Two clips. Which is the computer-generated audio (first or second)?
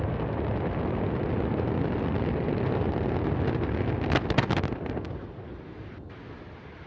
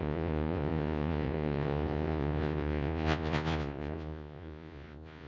second